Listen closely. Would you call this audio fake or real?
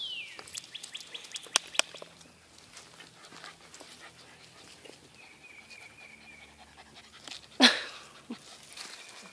real